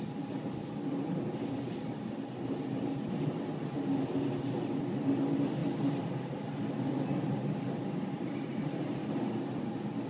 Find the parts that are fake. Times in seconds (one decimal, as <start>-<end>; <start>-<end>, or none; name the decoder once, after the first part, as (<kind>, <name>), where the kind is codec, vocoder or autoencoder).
none